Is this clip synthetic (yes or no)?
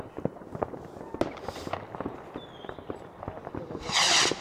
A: no